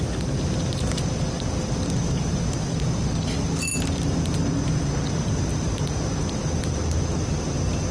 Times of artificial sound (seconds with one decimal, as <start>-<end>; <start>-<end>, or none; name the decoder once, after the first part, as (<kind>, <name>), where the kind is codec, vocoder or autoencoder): none